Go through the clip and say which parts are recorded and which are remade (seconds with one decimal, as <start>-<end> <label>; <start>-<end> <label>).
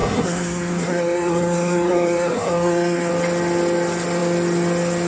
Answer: 0.0-3.1 remade; 3.1-5.1 recorded